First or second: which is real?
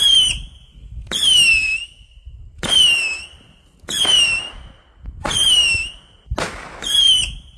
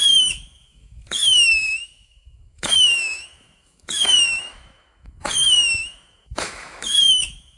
first